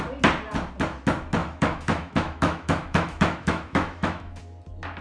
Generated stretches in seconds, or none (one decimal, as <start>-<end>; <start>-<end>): 1.4-4.4